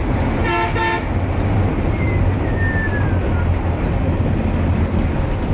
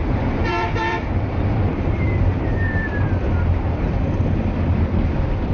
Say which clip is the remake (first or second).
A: second